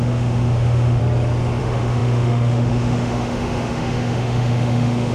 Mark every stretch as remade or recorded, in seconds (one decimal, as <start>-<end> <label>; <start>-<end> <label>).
0.0-1.0 remade; 1.0-1.6 recorded; 1.6-5.1 remade